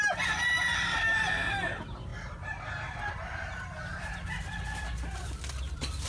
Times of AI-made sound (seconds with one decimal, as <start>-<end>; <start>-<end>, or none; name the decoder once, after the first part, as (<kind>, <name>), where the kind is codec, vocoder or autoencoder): 2.1-6.1 (vocoder, BigVGAN v2)